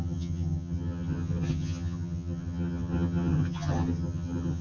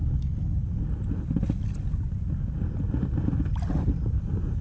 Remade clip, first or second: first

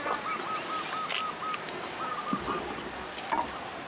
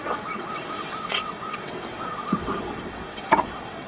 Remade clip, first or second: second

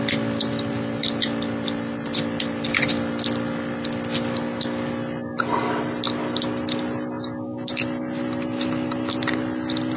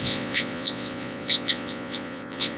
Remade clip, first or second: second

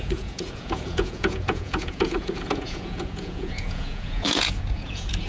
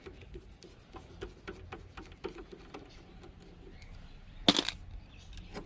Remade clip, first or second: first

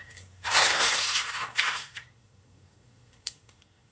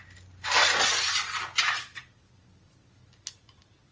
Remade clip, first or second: first